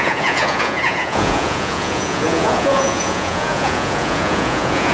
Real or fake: fake